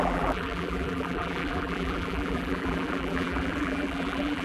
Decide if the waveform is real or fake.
fake